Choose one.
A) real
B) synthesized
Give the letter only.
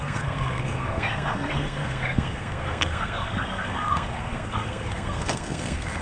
B